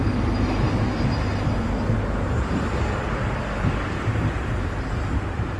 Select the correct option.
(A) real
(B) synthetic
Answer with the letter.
A